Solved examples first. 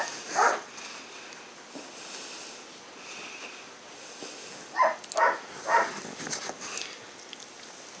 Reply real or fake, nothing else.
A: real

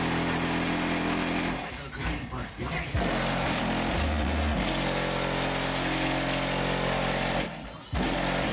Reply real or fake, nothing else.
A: real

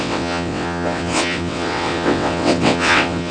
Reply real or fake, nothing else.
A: fake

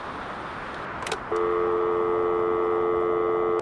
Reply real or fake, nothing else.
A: real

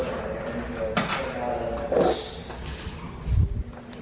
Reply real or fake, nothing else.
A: real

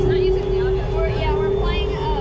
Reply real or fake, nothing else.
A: real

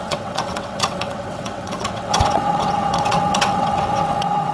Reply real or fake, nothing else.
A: fake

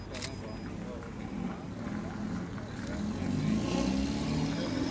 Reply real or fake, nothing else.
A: real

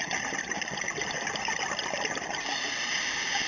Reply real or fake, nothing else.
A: real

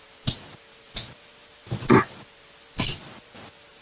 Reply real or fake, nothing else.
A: real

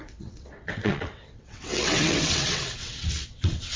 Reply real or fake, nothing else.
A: fake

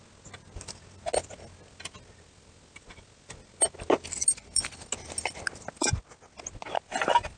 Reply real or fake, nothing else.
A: real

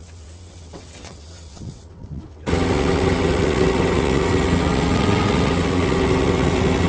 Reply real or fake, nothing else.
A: fake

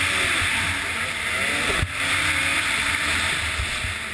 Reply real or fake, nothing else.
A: real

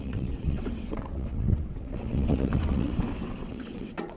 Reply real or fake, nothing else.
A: fake